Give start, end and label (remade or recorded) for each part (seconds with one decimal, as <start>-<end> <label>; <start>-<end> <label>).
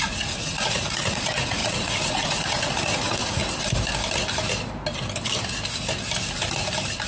0.0-3.4 remade; 3.4-7.1 recorded